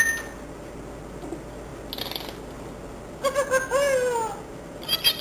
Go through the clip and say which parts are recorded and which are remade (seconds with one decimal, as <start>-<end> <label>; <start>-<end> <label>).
0.0-5.2 recorded